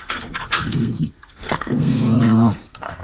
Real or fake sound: fake